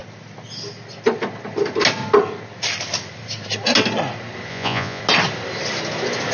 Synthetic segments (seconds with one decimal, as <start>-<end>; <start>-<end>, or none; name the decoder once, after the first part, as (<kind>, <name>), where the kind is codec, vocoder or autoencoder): 4.5-5.0 (vocoder, Vocos)